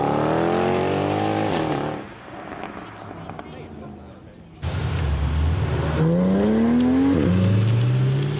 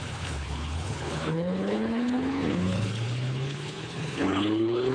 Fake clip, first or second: second